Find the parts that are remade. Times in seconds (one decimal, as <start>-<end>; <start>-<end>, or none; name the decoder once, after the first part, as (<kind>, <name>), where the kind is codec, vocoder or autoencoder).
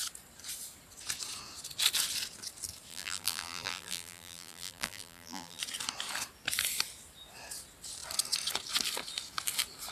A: 2.9-5.6 (vocoder, BigVGAN v2)